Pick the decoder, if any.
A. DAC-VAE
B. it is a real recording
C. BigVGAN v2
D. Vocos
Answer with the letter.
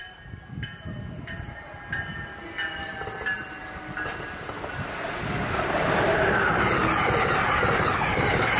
B